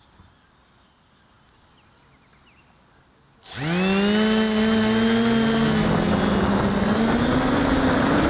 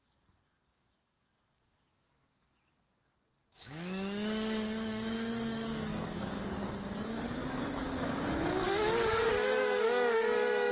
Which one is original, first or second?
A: first